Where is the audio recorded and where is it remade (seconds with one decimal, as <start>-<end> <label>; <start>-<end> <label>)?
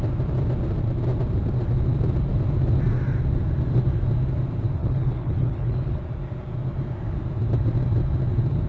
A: 0.0-4.8 recorded; 4.8-6.0 remade; 6.0-8.7 recorded